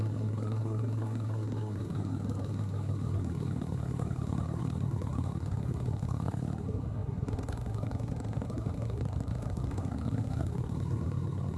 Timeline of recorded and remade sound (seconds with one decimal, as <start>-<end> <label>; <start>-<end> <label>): 0.0-11.6 remade